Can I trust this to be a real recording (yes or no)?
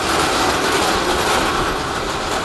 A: yes